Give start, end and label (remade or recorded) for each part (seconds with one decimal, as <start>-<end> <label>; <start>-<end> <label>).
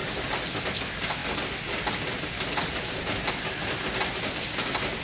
0.0-5.0 recorded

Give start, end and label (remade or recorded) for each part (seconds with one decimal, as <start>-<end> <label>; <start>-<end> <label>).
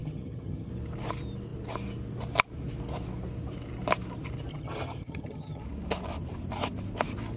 0.0-0.7 remade; 0.7-4.5 recorded; 4.5-5.6 remade; 5.6-7.4 recorded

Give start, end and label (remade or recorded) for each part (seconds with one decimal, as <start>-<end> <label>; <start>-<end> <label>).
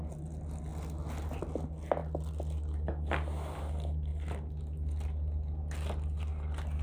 0.0-6.8 recorded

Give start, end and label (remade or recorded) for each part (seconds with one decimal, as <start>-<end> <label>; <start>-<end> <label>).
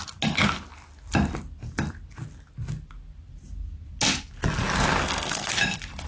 0.0-5.0 recorded; 5.0-5.5 remade; 5.5-6.1 recorded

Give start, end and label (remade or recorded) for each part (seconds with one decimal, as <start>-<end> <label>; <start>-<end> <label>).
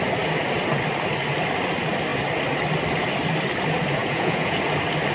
0.0-4.0 recorded; 4.0-4.6 remade; 4.6-5.1 recorded